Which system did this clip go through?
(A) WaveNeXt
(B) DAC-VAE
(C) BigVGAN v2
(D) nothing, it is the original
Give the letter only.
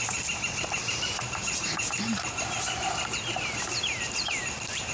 C